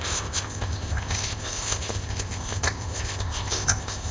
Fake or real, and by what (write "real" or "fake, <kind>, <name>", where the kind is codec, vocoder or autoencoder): fake, codec, ZipCodec